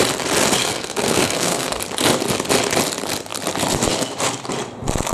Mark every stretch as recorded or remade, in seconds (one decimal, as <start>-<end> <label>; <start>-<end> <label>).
0.0-0.6 recorded; 0.6-1.8 remade; 1.8-5.1 recorded